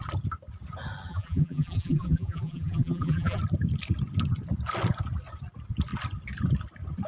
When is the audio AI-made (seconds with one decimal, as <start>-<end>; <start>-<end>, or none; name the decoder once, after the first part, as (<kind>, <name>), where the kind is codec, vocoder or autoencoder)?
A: 1.1-3.4 (vocoder, BigVGAN v2)